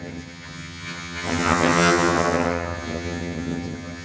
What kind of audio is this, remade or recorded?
remade